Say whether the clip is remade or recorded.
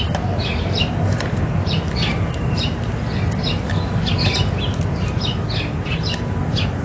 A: recorded